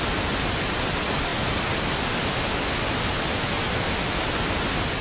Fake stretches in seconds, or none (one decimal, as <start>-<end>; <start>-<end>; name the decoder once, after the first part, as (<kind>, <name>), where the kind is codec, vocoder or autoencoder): none